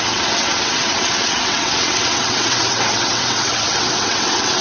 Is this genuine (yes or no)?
no